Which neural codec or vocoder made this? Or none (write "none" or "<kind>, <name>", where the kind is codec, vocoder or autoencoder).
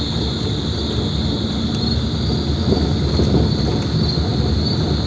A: none